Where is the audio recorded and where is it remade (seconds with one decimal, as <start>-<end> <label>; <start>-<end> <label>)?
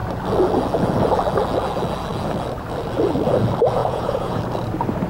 0.0-3.8 recorded; 3.8-4.4 remade; 4.4-5.1 recorded